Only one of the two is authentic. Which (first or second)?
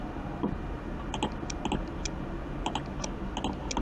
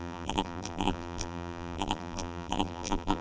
first